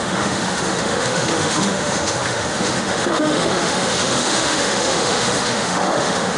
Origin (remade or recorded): remade